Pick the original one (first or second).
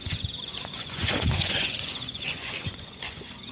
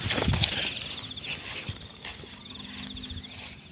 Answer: second